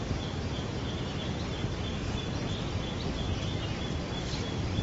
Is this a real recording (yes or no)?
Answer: yes